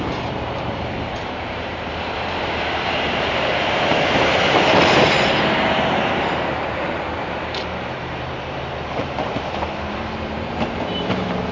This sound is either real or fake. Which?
fake